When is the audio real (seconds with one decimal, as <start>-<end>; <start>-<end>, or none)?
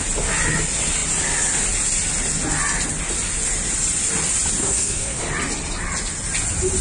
0.0-4.6; 5.2-6.8